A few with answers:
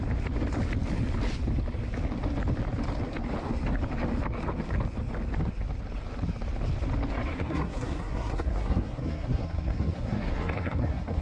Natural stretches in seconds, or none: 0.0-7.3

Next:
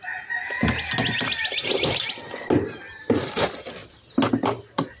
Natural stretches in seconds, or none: 0.0-5.0

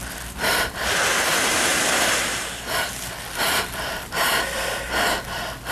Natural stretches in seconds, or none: 0.0-5.7

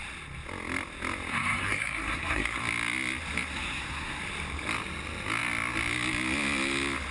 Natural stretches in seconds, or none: 0.0-1.3; 2.6-3.5; 4.2-7.1

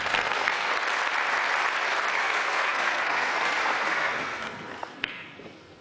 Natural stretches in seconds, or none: 0.7-2.2